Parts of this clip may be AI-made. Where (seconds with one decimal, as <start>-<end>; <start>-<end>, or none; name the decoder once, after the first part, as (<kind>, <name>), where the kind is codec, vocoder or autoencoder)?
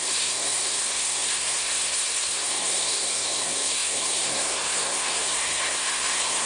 0.0-6.5 (codec, SNAC)